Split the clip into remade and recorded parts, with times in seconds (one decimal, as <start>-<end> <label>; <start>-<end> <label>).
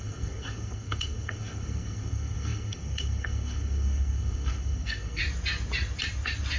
0.0-5.2 remade; 5.2-6.6 recorded